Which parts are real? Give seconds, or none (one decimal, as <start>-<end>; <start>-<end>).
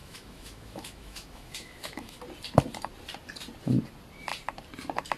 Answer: 2.2-5.2